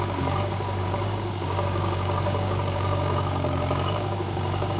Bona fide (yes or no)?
no